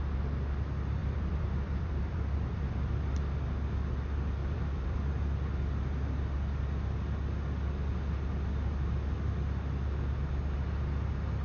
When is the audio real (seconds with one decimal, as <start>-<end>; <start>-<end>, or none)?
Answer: 0.0-1.0; 3.0-4.4; 5.2-11.4

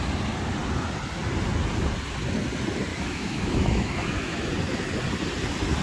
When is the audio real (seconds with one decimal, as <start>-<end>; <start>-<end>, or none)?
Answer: 0.0-2.9; 4.5-5.8